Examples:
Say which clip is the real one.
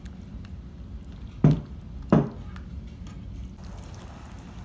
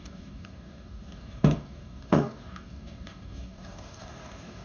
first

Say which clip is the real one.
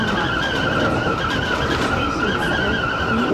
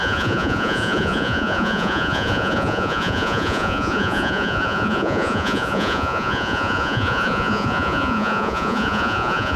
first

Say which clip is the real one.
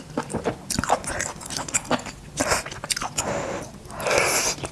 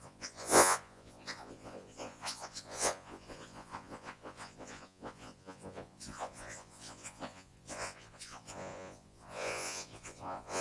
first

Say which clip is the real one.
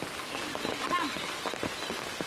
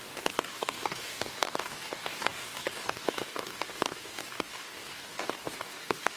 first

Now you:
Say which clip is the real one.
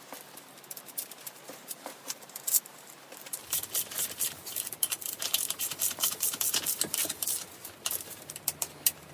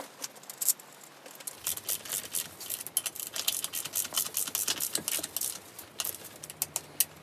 second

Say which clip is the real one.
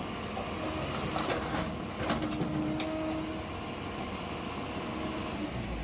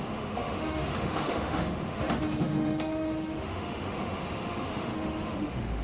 first